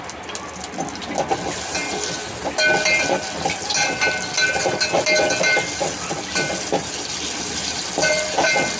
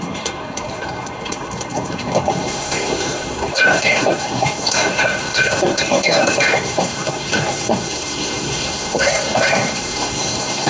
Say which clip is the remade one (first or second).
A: second